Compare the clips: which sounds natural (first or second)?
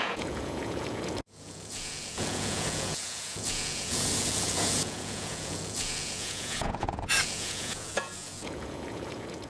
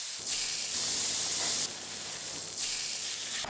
second